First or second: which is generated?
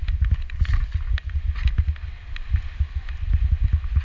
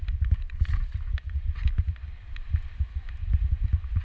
second